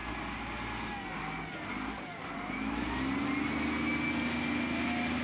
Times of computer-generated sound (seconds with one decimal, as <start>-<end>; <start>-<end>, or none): none